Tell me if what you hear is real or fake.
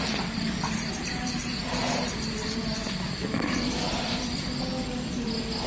real